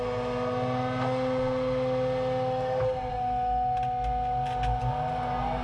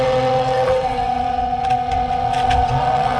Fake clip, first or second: second